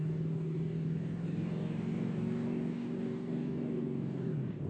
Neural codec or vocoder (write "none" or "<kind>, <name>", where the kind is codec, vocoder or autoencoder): codec, DAC